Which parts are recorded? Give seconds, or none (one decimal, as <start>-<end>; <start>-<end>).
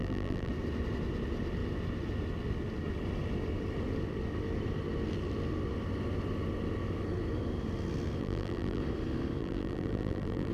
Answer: 0.5-8.2; 8.8-9.4